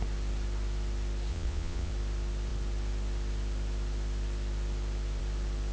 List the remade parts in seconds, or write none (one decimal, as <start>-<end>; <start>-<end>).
1.3-1.9